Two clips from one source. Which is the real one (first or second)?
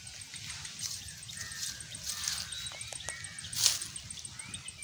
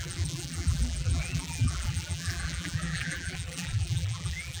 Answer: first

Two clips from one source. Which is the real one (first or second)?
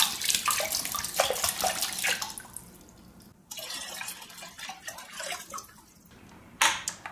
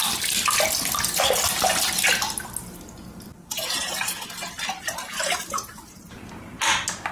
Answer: second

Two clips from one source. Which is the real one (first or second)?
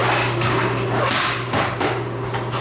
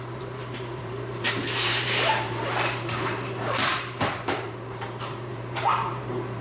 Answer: first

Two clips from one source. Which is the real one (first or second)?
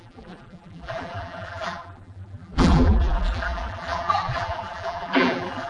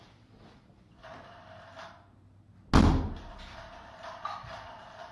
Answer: second